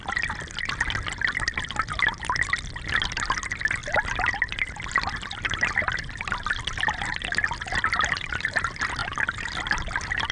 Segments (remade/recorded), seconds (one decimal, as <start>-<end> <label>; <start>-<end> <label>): 0.0-10.3 recorded